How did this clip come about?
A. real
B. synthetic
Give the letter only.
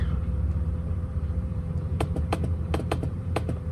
B